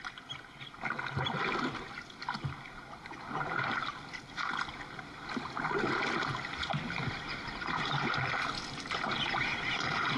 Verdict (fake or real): real